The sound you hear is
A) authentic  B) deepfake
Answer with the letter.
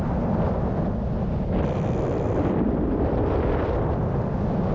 B